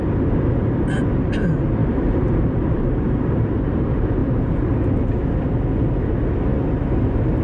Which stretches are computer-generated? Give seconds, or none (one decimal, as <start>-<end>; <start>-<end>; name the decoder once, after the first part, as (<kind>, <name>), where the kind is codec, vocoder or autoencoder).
1.8-3.4 (vocoder, BigVGAN v2); 6.5-7.4